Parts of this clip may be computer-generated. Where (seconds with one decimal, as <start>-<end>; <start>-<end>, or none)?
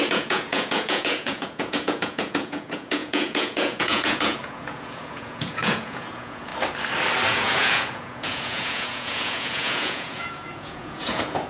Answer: 0.0-6.5; 7.3-11.5